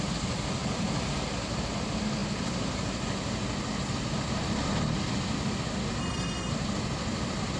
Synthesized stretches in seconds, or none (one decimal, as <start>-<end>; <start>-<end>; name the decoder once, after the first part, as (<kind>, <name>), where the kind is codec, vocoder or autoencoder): 6.0-6.5 (codec, SNAC)